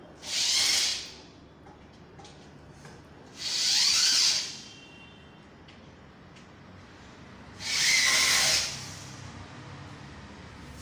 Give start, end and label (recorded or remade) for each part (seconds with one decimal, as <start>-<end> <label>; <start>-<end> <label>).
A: 0.0-10.8 recorded